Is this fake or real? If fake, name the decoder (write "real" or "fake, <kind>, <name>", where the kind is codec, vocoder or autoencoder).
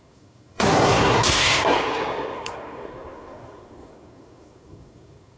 fake, codec, SNAC